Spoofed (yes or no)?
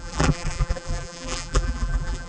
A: yes